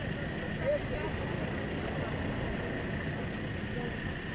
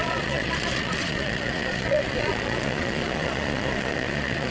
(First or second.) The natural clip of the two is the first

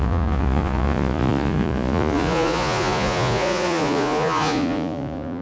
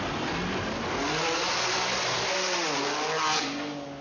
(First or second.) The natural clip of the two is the second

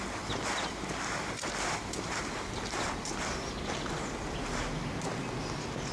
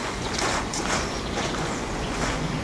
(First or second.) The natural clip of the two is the first